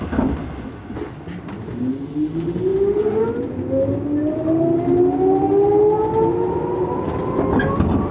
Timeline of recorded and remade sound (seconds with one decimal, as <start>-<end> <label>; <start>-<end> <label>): 0.0-8.1 recorded